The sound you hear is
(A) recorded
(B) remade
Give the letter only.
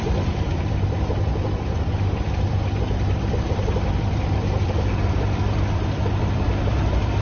B